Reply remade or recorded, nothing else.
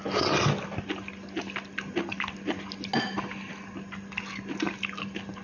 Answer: recorded